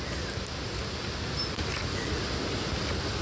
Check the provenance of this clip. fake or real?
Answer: real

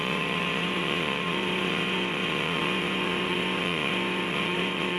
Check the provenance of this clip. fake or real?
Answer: fake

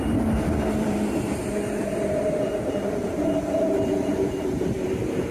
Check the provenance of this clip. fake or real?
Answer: fake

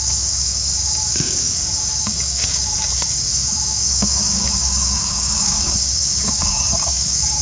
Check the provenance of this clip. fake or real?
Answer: fake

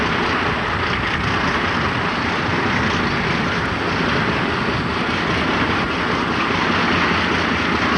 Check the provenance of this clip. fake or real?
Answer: real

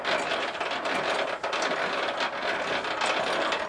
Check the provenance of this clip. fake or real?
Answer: real